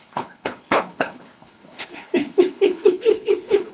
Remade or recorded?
remade